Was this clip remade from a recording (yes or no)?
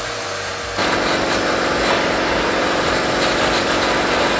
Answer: no